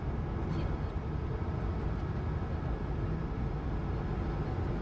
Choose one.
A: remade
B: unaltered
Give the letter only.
B